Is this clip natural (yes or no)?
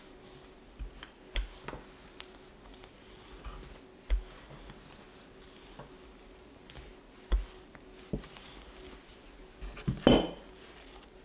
yes